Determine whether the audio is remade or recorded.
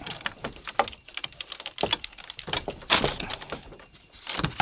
recorded